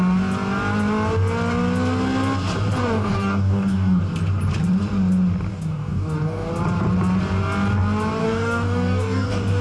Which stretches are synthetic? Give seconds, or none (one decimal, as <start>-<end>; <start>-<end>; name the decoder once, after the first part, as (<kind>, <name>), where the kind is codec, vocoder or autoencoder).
2.8-4.0 (codec, DAC); 5.5-6.5; 8.2-9.6